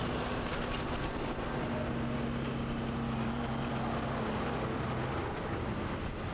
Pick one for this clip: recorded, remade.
recorded